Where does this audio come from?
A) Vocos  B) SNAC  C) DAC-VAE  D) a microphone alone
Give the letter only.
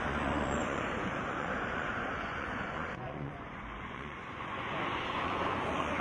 A